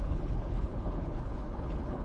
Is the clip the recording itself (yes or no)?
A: no